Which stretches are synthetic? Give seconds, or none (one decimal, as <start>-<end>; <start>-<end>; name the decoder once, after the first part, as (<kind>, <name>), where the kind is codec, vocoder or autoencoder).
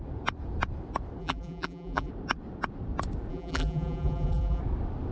1.2-2.1 (vocoder, BigVGAN v2); 3.3-4.6